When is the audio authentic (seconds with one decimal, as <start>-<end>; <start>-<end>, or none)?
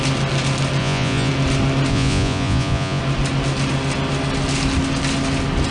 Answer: 0.0-0.8; 1.3-1.9; 3.0-5.7